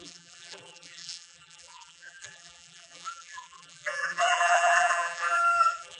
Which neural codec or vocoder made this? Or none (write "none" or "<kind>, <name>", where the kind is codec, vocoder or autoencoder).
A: vocoder, BigVGAN v2